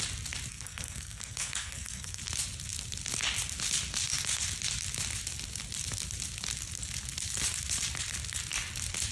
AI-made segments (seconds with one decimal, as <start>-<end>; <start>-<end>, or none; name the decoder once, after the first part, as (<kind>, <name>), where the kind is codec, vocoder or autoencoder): 0.5-2.2 (codec, SNAC)